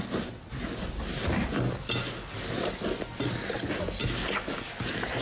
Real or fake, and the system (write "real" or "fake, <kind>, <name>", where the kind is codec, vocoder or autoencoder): real